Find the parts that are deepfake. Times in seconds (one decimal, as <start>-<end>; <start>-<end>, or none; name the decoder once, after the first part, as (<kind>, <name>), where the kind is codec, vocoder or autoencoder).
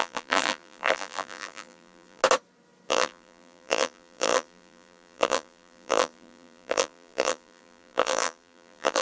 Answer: 0.0-2.2 (vocoder, BigVGAN v2); 2.9-9.0